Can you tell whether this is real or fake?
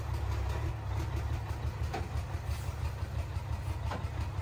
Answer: real